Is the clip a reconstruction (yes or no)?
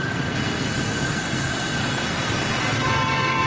yes